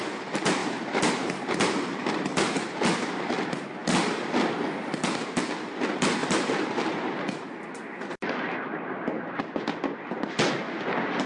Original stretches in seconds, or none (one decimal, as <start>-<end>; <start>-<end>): 0.0-0.6; 2.8-6.2; 7.2-11.3